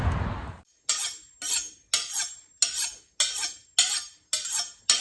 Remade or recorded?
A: recorded